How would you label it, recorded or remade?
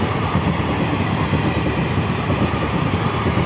recorded